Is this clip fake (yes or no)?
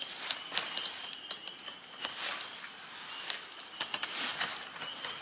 no